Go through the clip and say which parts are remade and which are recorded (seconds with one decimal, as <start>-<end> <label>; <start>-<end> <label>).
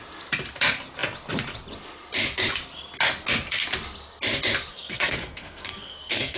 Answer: 0.0-4.7 recorded; 4.7-6.4 remade